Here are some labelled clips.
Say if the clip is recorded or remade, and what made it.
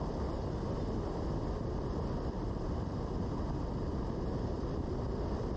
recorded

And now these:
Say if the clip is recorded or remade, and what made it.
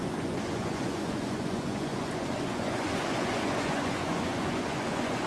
remade, vocoder, Vocos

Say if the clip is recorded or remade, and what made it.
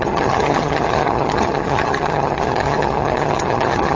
remade, vocoder, HiFi-GAN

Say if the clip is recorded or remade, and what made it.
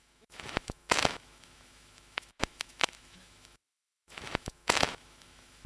remade, autoencoder, DAC-VAE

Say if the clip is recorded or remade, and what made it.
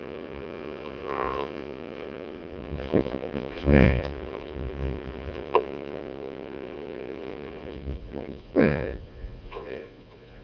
remade, vocoder, Vocos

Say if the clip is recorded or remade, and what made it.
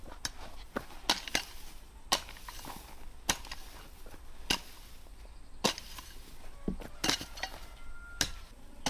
recorded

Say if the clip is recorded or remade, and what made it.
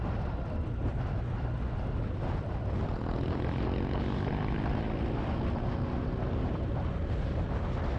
recorded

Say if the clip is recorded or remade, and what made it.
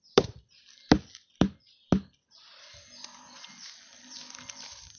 recorded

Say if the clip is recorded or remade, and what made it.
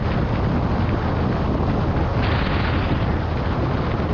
recorded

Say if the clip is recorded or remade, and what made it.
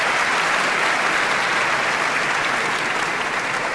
recorded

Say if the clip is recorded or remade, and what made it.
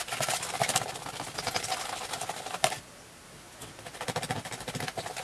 recorded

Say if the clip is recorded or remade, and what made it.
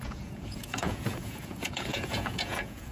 remade, vocoder, Vocos